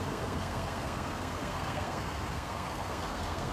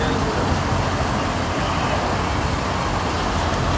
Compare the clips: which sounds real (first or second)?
second